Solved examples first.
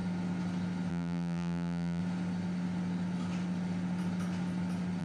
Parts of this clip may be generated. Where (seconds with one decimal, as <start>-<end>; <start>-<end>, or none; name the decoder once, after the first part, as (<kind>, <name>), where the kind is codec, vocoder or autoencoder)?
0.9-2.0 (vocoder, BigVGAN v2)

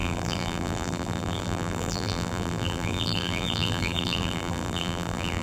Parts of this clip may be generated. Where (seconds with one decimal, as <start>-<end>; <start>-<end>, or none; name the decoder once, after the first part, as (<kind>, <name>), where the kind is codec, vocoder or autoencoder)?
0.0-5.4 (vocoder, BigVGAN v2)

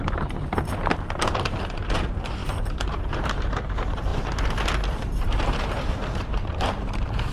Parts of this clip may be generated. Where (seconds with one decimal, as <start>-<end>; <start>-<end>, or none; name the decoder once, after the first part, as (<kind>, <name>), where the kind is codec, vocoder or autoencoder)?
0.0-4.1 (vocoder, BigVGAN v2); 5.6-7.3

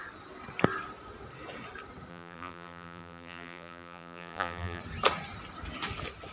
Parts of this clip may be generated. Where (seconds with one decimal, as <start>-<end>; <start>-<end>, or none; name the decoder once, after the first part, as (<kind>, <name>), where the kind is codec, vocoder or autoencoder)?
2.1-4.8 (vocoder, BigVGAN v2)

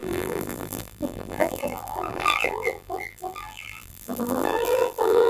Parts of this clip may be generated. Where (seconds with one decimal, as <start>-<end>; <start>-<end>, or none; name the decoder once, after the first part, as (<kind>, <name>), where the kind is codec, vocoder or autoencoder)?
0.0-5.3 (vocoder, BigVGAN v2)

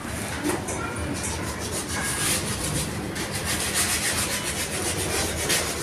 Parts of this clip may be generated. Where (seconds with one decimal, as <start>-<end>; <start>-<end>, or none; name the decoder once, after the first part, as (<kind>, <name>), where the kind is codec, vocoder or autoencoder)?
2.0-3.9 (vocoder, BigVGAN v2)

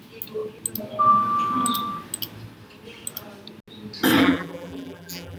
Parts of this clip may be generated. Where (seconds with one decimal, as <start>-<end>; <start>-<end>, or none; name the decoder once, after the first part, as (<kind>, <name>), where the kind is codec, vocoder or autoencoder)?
4.2-5.4 (vocoder, BigVGAN v2)

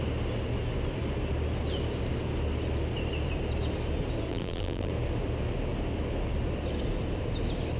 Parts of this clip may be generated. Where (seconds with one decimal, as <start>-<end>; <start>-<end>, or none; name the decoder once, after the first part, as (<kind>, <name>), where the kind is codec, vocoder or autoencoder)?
4.3-4.9 (vocoder, BigVGAN v2)